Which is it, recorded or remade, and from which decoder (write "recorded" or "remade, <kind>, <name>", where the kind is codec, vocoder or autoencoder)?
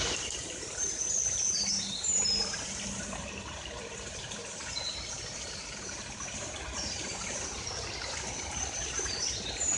remade, vocoder, BigVGAN v2